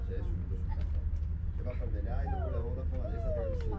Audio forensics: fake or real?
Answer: real